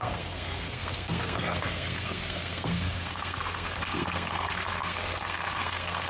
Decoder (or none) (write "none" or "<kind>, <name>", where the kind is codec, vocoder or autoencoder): codec, SNAC